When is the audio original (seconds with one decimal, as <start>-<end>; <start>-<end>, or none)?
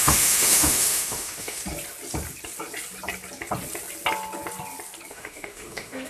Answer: 1.6-5.1